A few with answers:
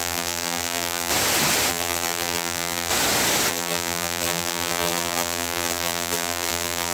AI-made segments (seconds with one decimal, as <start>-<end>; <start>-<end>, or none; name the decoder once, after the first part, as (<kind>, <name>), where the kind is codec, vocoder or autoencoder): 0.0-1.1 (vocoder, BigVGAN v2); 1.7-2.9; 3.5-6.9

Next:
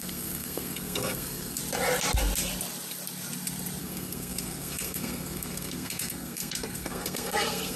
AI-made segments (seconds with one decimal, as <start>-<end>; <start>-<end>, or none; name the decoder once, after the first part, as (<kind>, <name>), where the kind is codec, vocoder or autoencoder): 0.0-1.6 (codec, SNAC); 3.8-7.8

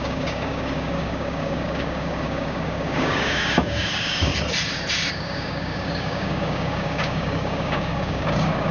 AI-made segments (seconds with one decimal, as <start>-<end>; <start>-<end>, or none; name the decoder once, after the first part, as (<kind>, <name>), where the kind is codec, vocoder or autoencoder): 0.0-4.3 (codec, DAC); 5.1-8.7

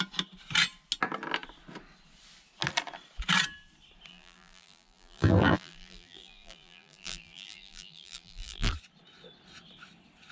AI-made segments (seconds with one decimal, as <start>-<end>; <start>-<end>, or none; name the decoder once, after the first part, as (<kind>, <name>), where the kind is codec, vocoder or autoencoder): 4.1-8.7 (vocoder, BigVGAN v2)

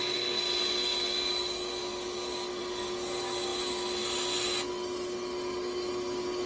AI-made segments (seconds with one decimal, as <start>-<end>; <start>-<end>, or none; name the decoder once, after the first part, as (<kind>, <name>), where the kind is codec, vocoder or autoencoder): none